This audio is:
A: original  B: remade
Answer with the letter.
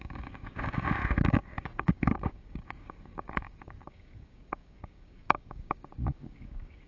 B